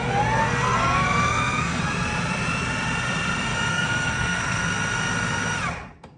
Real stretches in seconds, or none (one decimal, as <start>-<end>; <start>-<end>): 0.0-0.4; 1.8-3.7; 4.6-6.2